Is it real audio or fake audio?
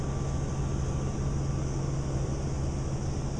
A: real